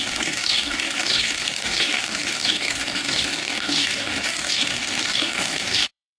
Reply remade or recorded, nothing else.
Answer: remade